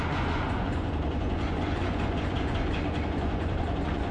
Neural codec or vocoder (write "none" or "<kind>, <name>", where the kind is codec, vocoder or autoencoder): vocoder, Vocos